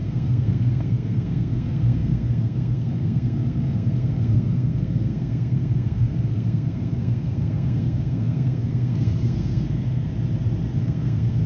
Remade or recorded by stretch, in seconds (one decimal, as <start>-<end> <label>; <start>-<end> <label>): 0.0-10.1 remade; 10.1-10.8 recorded; 10.8-11.5 remade

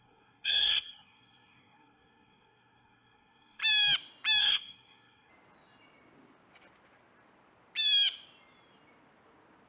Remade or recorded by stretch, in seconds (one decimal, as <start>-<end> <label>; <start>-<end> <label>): 0.0-3.6 remade; 3.6-4.4 recorded; 4.4-5.3 remade; 5.3-9.7 recorded

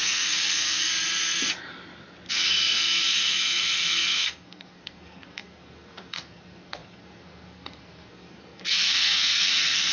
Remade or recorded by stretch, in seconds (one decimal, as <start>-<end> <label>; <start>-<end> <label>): 0.0-0.9 remade; 0.9-2.3 recorded; 2.3-9.9 remade

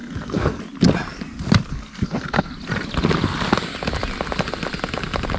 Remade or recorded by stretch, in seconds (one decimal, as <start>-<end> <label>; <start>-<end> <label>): 0.0-0.6 remade; 0.6-1.7 recorded; 1.7-2.5 remade; 2.5-5.4 recorded

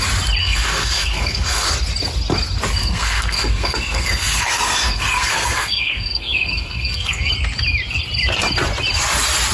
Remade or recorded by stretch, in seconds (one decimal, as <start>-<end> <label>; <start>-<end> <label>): 0.0-0.4 recorded; 0.4-1.7 remade; 1.7-2.8 recorded; 2.8-7.3 remade; 7.3-9.5 recorded